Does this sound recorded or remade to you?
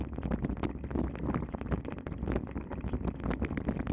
recorded